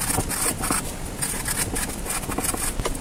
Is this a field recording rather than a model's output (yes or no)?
yes